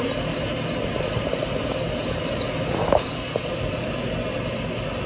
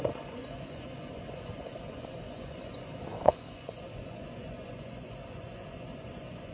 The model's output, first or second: second